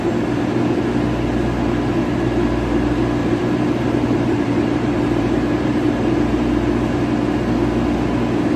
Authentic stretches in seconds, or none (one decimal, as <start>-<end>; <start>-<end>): 0.0-3.2; 6.5-8.6